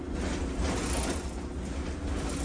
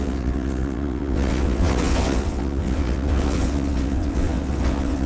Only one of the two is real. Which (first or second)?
first